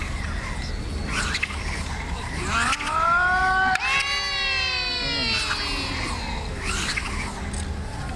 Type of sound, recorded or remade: recorded